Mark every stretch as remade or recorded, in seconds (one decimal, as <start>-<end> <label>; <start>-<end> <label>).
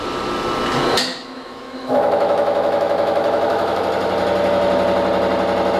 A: 0.0-1.1 recorded; 1.1-3.8 remade; 3.8-5.8 recorded